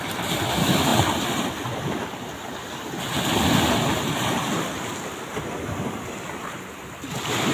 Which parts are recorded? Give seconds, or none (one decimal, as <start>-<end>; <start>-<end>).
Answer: 0.0-7.5